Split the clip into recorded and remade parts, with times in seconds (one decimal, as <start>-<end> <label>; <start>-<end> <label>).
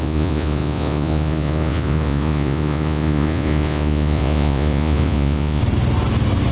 0.0-5.6 remade; 5.6-6.5 recorded